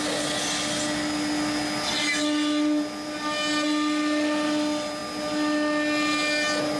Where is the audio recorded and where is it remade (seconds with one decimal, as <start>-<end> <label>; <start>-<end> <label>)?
0.0-6.8 recorded